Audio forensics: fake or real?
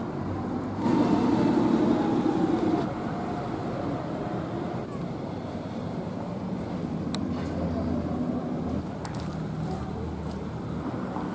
real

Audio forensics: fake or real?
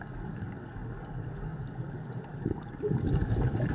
fake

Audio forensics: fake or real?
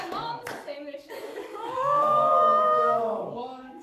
fake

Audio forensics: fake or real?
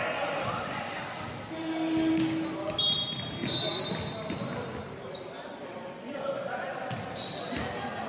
real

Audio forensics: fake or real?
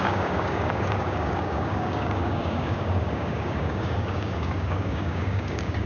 fake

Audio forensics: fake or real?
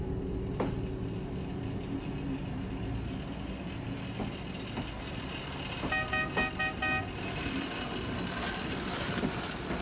real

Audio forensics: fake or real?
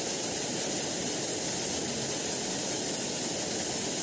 real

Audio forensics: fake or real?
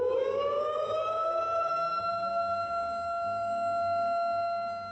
fake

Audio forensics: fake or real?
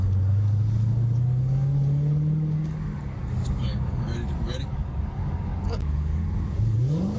fake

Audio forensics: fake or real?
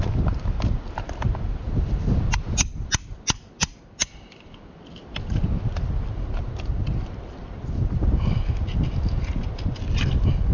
real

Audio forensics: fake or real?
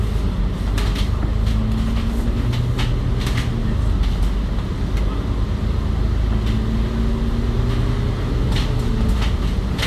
real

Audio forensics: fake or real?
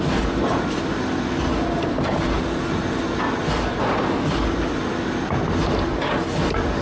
real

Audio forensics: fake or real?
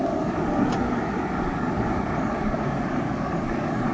fake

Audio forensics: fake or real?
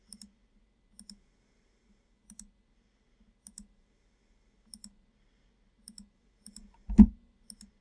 real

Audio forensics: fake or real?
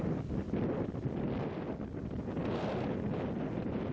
real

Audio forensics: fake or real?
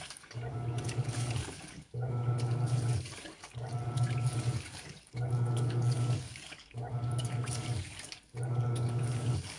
fake